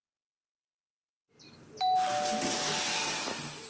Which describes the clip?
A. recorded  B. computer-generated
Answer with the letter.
A